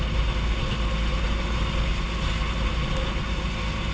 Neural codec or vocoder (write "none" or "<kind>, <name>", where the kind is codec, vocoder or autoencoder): none